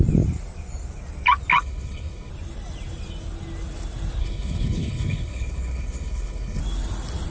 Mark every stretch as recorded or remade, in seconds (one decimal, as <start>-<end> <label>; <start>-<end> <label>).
0.0-1.5 recorded; 1.5-2.3 remade; 2.3-4.2 recorded; 4.2-6.6 remade; 6.6-7.3 recorded